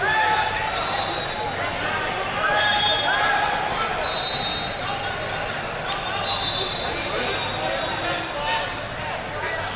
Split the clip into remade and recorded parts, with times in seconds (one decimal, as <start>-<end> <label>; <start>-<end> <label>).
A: 0.0-9.8 recorded